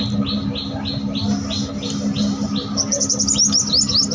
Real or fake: real